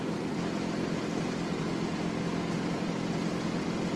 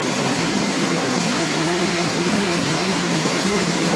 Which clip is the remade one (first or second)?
second